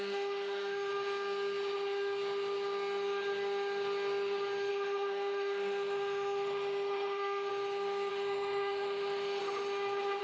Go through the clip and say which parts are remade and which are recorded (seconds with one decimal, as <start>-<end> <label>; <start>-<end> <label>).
0.0-0.9 remade; 0.9-4.7 recorded; 4.7-7.5 remade; 7.5-8.1 recorded; 8.1-9.4 remade; 9.4-10.2 recorded